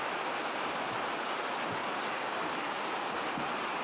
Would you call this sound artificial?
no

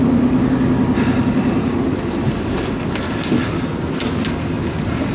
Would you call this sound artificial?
no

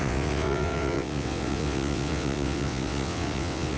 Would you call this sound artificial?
yes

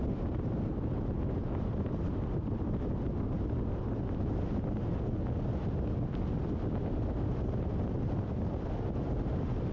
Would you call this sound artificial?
no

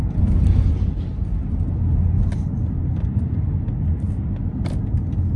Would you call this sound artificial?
no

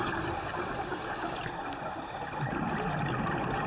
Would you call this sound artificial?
yes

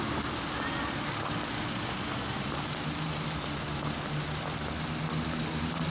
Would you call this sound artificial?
no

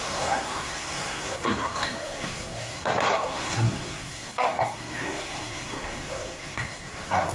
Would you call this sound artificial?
yes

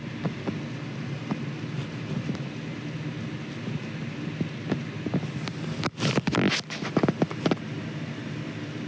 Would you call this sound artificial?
no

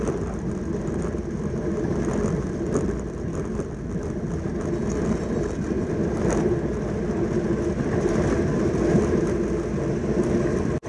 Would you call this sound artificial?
no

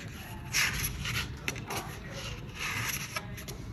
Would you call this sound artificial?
no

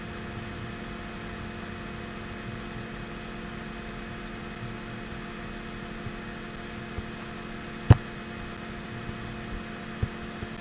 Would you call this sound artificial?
no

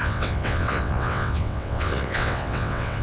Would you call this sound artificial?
yes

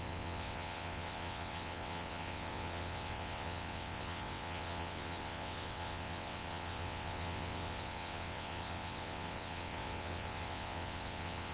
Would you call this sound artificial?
yes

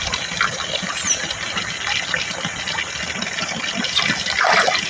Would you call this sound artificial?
no